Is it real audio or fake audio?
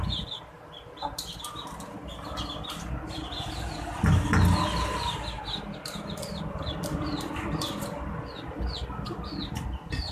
real